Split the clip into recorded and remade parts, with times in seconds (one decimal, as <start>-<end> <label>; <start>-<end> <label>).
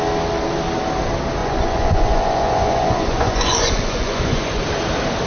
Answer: 0.0-1.4 recorded; 1.4-4.6 remade; 4.6-5.3 recorded